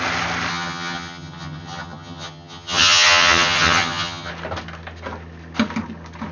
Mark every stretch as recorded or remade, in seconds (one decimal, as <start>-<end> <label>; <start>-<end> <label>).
0.0-0.5 recorded; 0.5-4.3 remade; 4.3-6.3 recorded